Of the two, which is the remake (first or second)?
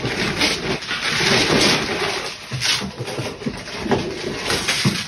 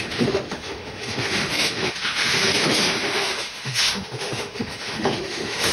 second